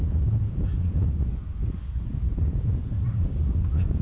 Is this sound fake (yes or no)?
yes